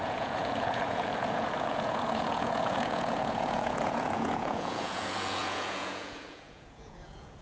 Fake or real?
fake